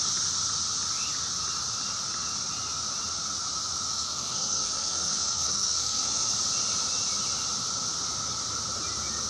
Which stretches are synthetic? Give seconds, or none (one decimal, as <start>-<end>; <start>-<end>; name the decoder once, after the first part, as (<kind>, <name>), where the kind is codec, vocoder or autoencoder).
3.9-6.3 (codec, SNAC)